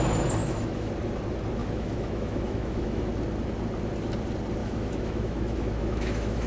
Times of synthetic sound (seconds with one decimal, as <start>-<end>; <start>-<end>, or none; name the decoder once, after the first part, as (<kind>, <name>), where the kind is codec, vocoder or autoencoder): 0.4-0.9 (autoencoder, DAC-VAE); 1.6-3.1; 4.6-6.5